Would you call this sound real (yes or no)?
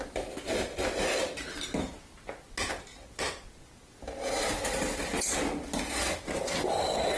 yes